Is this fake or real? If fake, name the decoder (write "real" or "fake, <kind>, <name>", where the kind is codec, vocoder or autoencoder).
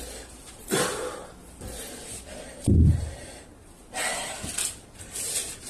fake, vocoder, BigVGAN v2